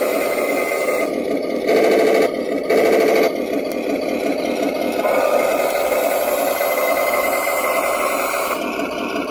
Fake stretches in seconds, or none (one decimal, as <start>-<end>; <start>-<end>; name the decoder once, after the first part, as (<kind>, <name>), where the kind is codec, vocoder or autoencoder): none